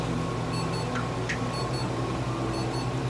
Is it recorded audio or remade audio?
recorded